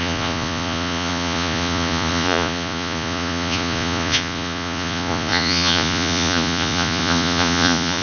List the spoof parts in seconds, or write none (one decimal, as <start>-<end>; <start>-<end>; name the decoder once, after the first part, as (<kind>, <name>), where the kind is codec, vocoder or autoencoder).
0.0-8.0 (vocoder, Vocos)